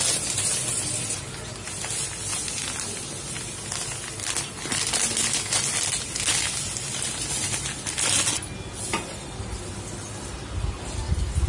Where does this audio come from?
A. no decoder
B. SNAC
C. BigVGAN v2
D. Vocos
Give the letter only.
A